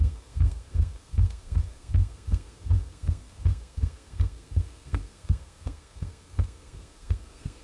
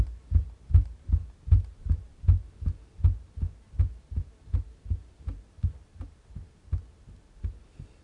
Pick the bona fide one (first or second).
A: second